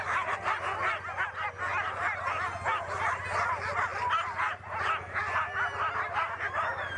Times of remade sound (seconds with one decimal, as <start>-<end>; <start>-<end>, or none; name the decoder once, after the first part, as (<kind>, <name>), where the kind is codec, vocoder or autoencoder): none